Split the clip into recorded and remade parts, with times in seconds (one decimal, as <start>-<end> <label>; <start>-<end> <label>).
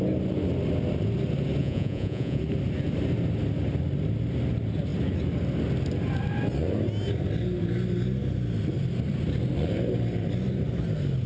0.0-1.6 recorded; 1.6-2.4 remade; 2.4-11.3 recorded